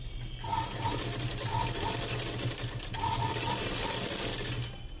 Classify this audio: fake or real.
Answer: real